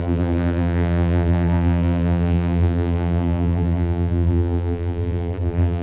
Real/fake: fake